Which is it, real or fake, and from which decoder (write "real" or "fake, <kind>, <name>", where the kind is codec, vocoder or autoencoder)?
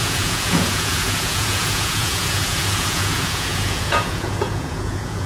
fake, vocoder, Vocos